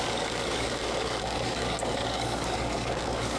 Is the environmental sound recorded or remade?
remade